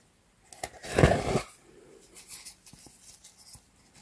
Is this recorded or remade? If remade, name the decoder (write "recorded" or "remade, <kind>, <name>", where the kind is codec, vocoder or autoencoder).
recorded